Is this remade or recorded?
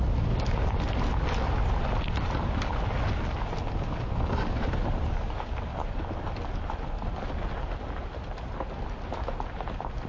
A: recorded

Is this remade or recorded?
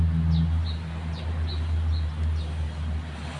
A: recorded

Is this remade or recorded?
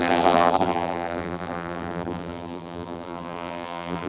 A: remade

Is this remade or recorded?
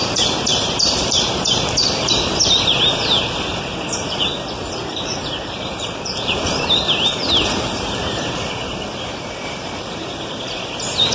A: remade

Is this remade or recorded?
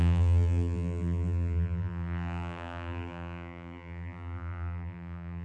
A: remade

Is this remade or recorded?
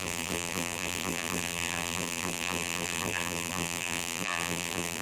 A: remade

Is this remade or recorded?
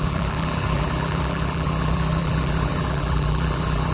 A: remade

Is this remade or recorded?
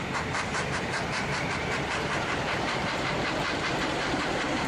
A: remade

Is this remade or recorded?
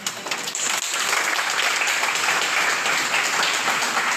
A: recorded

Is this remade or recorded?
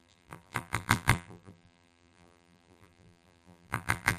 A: remade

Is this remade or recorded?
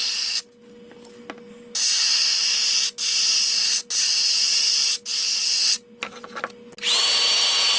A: recorded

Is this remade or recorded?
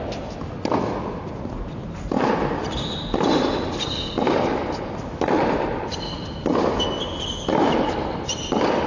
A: recorded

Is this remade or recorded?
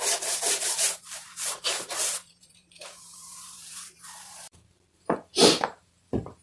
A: remade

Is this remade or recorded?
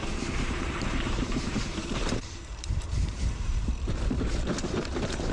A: remade